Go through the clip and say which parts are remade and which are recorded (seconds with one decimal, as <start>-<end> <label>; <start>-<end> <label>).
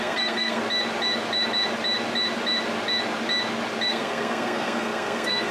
0.0-0.6 remade; 0.6-3.9 recorded; 3.9-5.5 remade